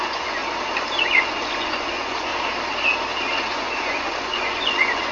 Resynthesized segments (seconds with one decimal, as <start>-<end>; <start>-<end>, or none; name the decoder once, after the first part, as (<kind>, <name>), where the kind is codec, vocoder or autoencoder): 0.0-0.4 (vocoder, Vocos); 1.0-2.3; 3.3-5.1